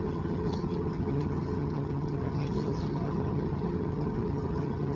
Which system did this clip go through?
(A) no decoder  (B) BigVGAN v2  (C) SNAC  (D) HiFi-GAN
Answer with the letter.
D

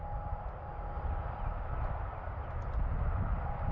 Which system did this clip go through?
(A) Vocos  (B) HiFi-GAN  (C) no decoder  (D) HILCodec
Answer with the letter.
C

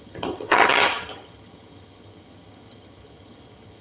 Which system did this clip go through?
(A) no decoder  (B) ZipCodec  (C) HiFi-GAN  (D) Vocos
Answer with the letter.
C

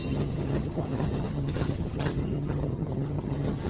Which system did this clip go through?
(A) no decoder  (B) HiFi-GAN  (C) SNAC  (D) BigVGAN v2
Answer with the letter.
B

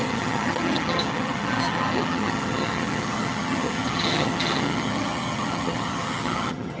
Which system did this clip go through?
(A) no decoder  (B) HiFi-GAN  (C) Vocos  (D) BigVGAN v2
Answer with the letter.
B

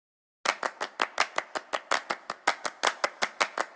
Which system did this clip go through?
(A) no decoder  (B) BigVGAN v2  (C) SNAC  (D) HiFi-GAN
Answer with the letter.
A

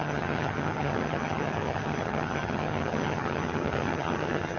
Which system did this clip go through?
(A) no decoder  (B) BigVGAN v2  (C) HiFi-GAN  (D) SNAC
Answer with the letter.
C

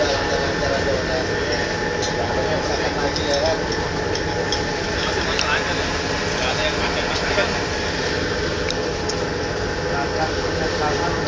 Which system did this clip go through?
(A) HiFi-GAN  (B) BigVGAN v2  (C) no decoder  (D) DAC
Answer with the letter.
C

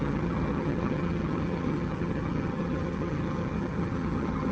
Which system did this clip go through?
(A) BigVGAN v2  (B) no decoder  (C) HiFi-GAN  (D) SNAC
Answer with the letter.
C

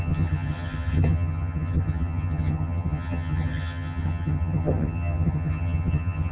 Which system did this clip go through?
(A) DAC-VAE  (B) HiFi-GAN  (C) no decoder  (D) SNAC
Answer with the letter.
B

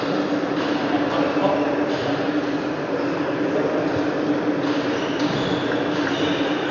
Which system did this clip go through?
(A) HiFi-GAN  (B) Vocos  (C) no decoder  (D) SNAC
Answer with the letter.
C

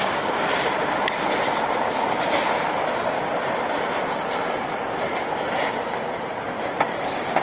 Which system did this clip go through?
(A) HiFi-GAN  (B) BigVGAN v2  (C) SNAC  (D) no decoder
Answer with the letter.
D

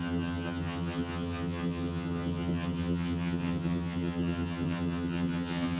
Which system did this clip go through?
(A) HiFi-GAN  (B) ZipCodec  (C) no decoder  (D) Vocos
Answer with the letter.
A